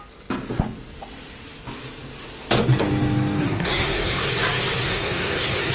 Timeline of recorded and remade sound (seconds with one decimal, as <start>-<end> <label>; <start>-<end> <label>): 0.0-3.4 recorded; 3.4-4.3 remade; 4.3-4.8 recorded; 4.8-5.7 remade